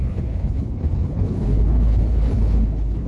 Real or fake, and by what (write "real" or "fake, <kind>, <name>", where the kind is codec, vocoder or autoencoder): fake, codec, HILCodec